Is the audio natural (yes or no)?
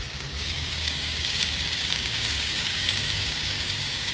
no